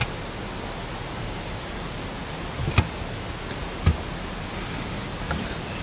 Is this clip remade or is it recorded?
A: recorded